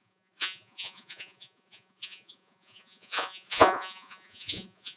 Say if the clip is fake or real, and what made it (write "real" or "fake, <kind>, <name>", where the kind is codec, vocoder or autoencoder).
fake, vocoder, Vocos